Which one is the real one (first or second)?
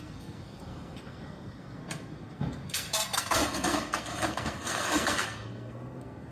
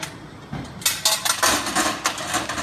second